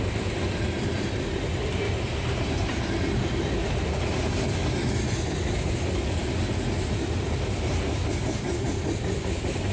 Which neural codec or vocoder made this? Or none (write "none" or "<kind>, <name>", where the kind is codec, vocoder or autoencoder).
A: none